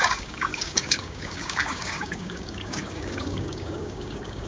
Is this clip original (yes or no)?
no